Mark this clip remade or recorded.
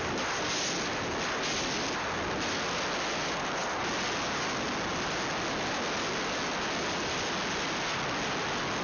recorded